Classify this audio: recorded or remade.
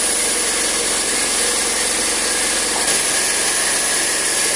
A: recorded